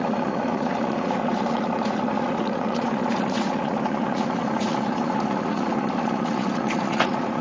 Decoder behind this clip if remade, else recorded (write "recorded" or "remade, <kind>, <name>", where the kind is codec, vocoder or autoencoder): remade, vocoder, Vocos